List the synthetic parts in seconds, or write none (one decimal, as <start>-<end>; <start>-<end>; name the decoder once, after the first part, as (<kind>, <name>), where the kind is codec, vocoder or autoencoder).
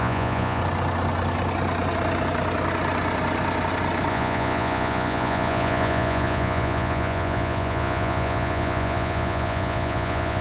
0.0-0.6 (vocoder, Vocos); 4.1-10.4